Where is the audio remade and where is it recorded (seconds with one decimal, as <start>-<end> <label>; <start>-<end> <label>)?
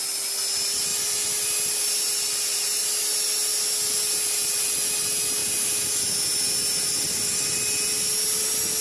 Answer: 0.0-8.8 recorded